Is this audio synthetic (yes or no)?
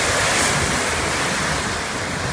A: no